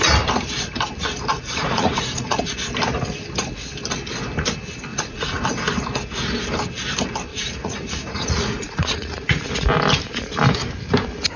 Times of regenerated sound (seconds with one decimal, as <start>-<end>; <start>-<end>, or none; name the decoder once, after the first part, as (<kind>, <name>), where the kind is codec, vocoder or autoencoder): 1.3-2.5 (vocoder, Vocos); 4.9-5.4; 7.3-9.5